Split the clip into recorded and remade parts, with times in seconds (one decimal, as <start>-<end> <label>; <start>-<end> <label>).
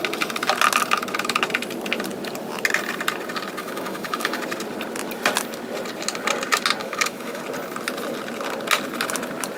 0.0-3.6 recorded; 3.6-4.4 remade; 4.4-6.8 recorded; 6.8-7.4 remade; 7.4-9.6 recorded